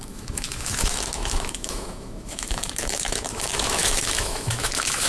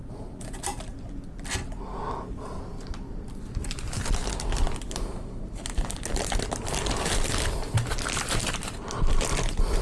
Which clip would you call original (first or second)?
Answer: second